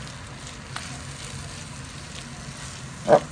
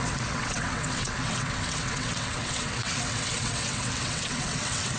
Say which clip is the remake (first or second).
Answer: second